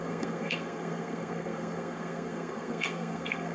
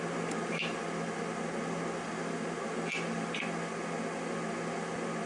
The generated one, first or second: first